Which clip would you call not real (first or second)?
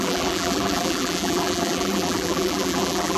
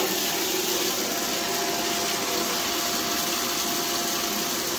first